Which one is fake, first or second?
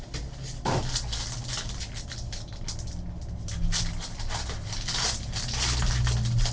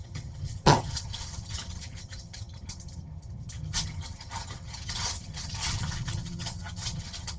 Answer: second